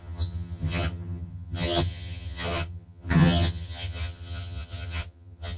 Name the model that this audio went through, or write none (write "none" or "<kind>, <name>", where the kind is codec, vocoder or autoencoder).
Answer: vocoder, HiFi-GAN